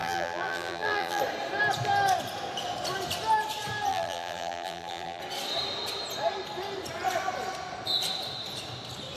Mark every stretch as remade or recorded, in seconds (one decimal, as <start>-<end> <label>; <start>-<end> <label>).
0.0-1.2 remade; 1.2-3.9 recorded; 3.9-5.2 remade; 5.2-9.2 recorded